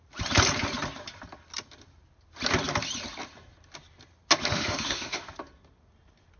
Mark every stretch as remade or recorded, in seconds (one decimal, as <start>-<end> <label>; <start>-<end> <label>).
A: 0.0-4.5 recorded; 4.5-5.3 remade; 5.3-6.4 recorded